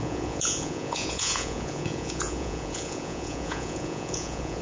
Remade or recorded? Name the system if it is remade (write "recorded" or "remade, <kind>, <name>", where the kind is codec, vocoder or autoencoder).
remade, vocoder, Vocos